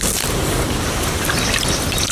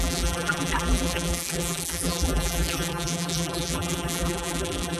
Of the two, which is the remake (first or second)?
second